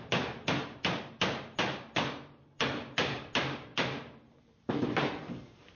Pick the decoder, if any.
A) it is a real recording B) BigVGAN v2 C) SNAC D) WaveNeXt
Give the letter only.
B